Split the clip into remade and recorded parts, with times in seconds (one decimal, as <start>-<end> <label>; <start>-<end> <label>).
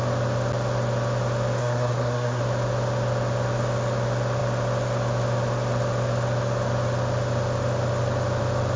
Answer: 0.0-1.6 recorded; 1.6-2.4 remade; 2.4-8.8 recorded